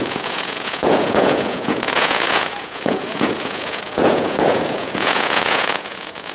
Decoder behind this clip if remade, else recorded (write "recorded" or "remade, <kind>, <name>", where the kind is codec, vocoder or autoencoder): remade, vocoder, Vocos